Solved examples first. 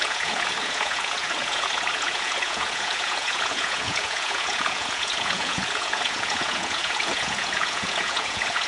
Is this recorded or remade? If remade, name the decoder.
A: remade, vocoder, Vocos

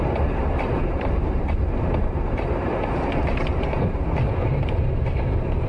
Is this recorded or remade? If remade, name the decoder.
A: remade, vocoder, BigVGAN v2